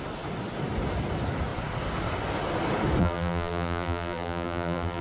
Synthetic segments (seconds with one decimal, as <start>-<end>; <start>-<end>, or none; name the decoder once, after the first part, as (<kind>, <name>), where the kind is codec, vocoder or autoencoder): 3.0-5.0 (vocoder, BigVGAN v2)